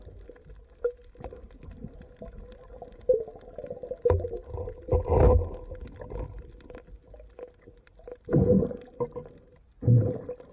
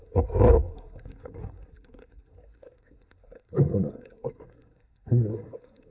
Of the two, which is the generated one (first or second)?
second